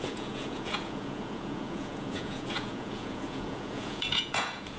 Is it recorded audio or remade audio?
remade